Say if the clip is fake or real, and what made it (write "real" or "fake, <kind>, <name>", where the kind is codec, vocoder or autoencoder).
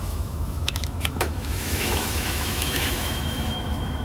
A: fake, autoencoder, DAC-VAE